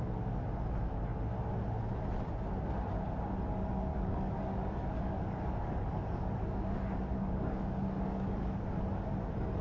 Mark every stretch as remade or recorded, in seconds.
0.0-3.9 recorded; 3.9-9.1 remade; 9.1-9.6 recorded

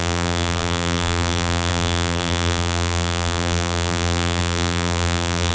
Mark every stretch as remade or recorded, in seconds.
0.0-5.5 remade

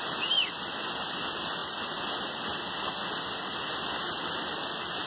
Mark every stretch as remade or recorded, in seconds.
0.0-5.1 recorded

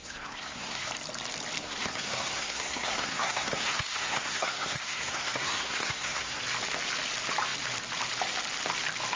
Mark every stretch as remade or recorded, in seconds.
0.0-0.9 remade; 0.9-1.6 recorded; 1.6-6.4 remade; 6.4-9.2 recorded

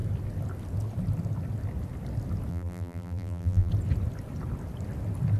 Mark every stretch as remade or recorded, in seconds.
0.0-2.5 recorded; 2.5-3.7 remade; 3.7-5.4 recorded